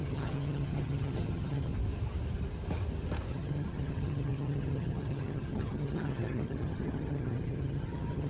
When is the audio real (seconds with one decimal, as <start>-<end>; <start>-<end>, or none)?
1.7-3.3